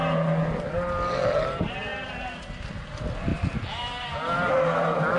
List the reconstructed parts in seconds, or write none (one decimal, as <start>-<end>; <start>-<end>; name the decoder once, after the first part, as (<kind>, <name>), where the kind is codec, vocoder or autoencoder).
none